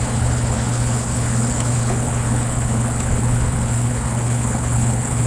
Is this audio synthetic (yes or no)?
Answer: yes